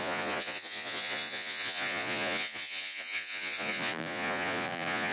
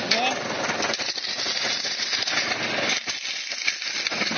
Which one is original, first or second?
second